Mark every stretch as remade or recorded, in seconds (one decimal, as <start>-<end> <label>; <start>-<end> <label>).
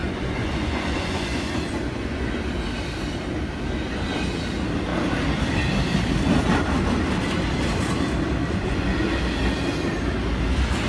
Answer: 0.0-2.4 remade; 2.4-8.4 recorded; 8.4-9.2 remade; 9.2-10.9 recorded